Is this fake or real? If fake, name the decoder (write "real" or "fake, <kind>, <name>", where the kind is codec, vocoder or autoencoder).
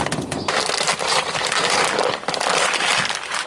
fake, vocoder, BigVGAN v2